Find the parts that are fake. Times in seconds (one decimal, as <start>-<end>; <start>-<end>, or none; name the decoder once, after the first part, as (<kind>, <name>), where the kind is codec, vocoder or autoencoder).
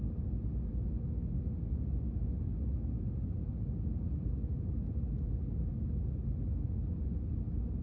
none